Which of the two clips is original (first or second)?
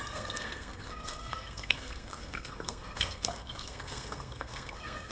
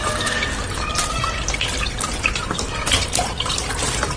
second